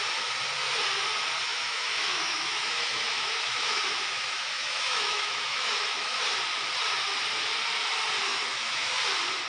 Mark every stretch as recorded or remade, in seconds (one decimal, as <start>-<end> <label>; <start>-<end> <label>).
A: 0.0-1.5 recorded; 1.5-6.2 remade; 6.2-8.3 recorded; 8.3-8.9 remade; 8.9-9.5 recorded